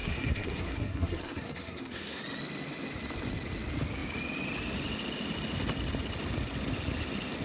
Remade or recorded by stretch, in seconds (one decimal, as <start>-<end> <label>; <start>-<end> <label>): 0.0-2.2 remade; 2.2-7.4 recorded